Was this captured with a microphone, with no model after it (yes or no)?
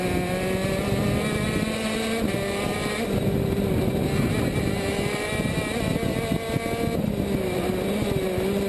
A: yes